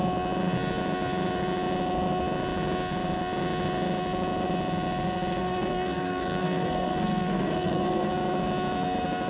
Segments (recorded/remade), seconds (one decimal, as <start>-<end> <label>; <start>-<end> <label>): 0.0-5.4 recorded; 5.4-8.1 remade; 8.1-9.3 recorded